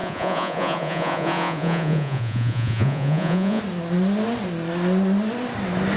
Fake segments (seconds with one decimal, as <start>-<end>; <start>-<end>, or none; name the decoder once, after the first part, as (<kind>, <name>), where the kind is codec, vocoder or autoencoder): 0.0-3.6 (vocoder, Vocos)